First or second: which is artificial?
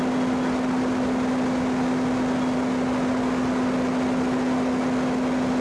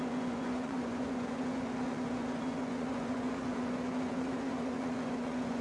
second